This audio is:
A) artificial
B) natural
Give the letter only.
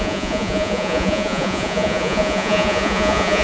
A